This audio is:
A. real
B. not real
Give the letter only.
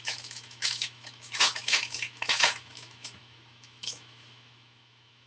B